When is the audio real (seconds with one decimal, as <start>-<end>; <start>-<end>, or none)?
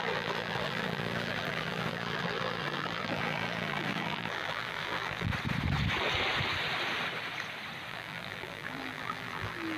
5.3-7.9